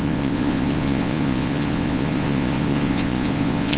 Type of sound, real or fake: fake